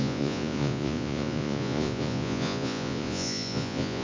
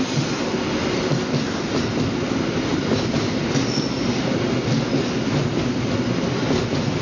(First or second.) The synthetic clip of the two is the first